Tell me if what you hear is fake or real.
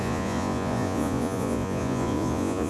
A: fake